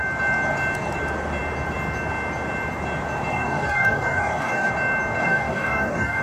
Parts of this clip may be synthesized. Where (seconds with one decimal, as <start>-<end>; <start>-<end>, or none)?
3.3-4.7; 5.2-6.2